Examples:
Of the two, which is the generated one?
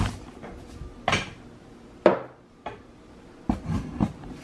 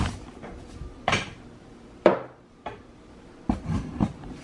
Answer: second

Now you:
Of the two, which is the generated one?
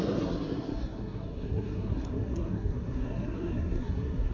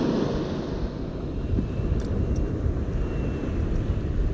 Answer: first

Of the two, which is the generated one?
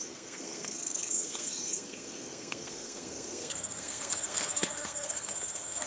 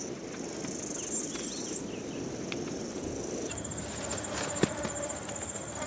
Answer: first